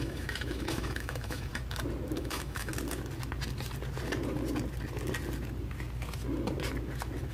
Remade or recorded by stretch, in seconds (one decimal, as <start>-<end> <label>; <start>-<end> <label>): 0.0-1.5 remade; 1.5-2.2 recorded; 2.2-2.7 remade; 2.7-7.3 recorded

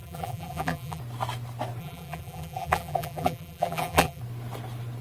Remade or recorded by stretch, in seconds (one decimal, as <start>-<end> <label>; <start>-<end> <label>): 0.0-1.0 remade; 1.0-1.8 recorded; 1.8-4.2 remade; 4.2-5.0 recorded

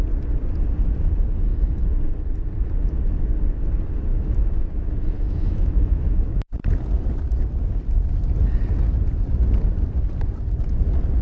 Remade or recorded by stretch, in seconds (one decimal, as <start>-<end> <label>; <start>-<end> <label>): 0.0-4.1 recorded; 4.1-6.5 remade; 6.5-11.2 recorded